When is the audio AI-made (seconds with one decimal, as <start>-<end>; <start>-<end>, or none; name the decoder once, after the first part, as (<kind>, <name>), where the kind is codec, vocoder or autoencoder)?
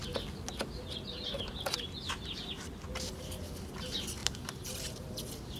4.2-4.9 (vocoder, BigVGAN v2)